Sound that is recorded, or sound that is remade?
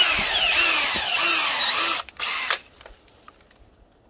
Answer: recorded